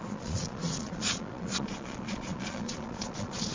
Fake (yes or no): yes